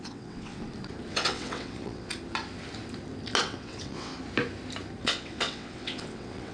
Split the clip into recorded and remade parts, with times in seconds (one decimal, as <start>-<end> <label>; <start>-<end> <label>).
0.0-0.6 remade; 0.6-1.1 recorded; 1.1-2.1 remade; 2.1-3.4 recorded; 3.4-4.1 remade; 4.1-5.0 recorded; 5.0-6.5 remade